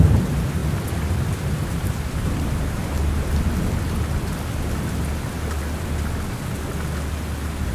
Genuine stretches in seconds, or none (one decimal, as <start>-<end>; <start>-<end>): 0.6-1.8; 2.8-7.7